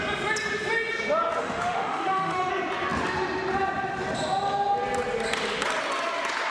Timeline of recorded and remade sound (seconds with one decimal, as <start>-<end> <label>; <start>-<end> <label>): 0.0-1.4 recorded; 1.4-2.5 remade; 2.5-6.5 recorded